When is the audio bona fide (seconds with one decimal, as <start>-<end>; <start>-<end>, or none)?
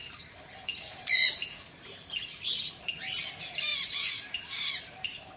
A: 3.2-3.7; 4.7-5.4